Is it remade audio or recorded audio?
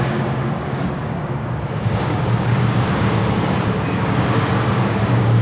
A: remade